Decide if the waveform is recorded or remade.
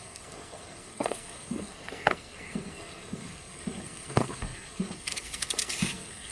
remade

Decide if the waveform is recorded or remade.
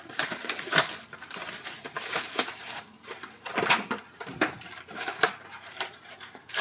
remade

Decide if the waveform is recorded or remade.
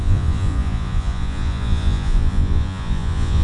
remade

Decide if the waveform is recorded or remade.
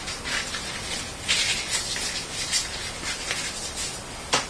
recorded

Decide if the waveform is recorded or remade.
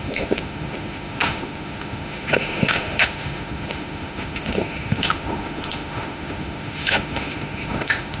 remade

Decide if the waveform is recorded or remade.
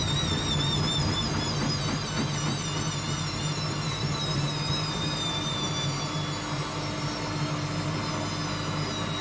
recorded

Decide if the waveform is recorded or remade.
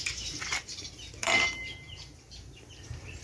remade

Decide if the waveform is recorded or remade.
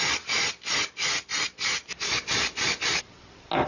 recorded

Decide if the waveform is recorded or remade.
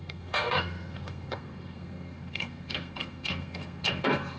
remade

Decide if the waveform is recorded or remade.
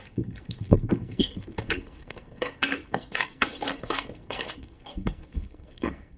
remade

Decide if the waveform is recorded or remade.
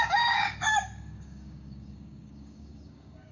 remade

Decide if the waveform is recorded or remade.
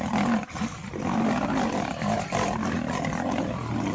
recorded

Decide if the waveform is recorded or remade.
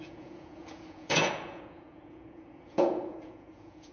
remade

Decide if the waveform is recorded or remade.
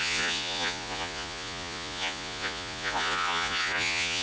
remade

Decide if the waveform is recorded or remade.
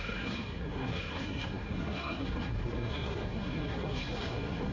remade